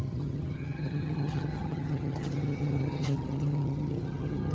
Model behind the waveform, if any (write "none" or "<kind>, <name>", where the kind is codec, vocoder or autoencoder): vocoder, HiFi-GAN